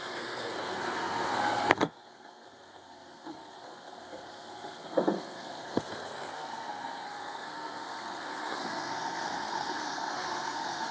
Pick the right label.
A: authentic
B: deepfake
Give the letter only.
B